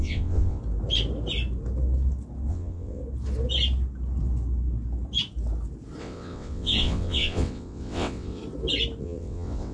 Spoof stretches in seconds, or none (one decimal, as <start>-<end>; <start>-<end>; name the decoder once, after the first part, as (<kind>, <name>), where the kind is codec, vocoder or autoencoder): 0.0-0.6 (vocoder, WaveNeXt); 2.5-3.0; 6.0-8.4; 9.0-9.7

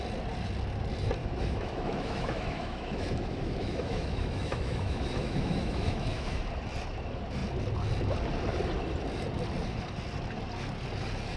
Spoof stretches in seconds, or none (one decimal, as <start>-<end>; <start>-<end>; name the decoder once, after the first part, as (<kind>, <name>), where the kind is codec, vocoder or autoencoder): 1.2-6.4 (autoencoder, DAC-VAE)

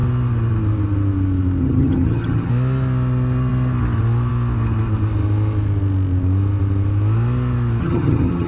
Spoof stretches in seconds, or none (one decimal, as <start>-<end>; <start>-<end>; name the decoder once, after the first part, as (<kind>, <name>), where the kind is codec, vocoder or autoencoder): 1.6-2.5 (vocoder, HiFi-GAN); 7.8-8.5

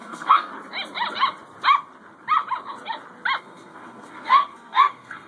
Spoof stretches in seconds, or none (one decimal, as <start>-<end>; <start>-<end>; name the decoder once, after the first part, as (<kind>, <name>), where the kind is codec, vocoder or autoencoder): 0.0-0.5 (codec, SNAC); 3.4-5.3

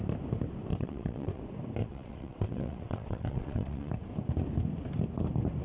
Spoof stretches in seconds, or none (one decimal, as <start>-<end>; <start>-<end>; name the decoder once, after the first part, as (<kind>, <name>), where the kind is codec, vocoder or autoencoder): 0.7-1.4 (vocoder, WaveNeXt); 1.8-3.9

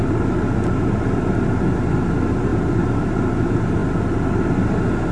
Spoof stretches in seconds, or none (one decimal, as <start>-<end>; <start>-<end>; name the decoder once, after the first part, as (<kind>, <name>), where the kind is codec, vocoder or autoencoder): none